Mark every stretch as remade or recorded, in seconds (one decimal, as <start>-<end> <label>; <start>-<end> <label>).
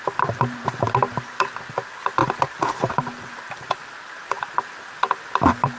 0.0-5.8 remade